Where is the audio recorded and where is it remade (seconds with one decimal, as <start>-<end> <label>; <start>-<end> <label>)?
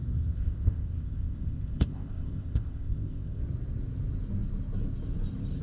0.0-3.4 remade; 3.4-5.6 recorded